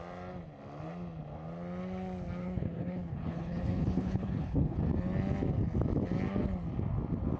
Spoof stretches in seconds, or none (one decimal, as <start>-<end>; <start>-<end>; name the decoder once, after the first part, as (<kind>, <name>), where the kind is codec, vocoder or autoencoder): 2.4-4.8 (codec, HILCodec)